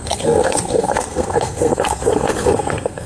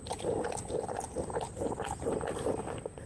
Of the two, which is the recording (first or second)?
second